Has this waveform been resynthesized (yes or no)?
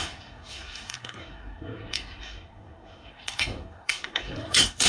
yes